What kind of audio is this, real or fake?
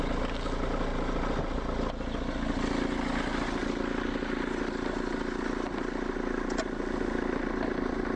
real